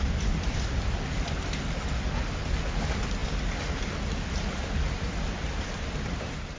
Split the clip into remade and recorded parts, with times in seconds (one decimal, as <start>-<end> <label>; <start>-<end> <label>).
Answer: 0.0-6.6 recorded